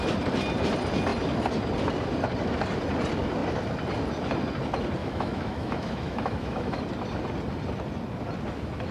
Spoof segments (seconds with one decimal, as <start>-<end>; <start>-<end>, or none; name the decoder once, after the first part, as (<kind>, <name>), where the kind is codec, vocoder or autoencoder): 5.0-6.8 (autoencoder, DAC-VAE)